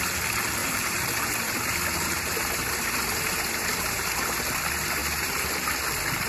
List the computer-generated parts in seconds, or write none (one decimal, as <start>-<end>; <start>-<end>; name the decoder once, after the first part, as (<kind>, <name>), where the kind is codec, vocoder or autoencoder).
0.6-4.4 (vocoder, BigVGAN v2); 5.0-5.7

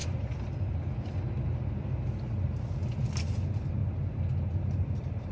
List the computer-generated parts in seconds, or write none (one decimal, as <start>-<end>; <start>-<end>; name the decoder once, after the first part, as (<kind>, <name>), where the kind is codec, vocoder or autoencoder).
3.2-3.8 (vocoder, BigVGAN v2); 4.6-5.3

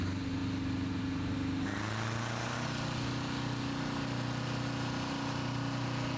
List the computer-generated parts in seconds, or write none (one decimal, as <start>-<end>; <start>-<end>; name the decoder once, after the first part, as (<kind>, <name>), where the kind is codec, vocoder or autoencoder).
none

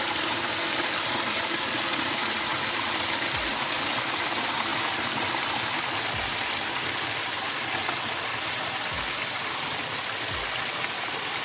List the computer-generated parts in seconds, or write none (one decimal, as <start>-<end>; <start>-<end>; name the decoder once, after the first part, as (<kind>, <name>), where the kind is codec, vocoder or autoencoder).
none

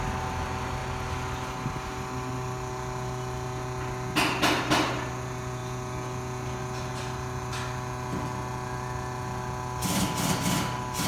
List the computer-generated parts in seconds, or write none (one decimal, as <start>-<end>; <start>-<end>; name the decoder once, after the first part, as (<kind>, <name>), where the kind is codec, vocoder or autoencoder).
none

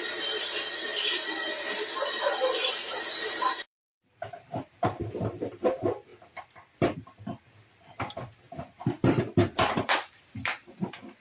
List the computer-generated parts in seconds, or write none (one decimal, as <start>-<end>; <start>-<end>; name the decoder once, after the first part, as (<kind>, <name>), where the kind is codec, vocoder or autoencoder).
0.0-0.9 (vocoder, BigVGAN v2); 3.2-11.2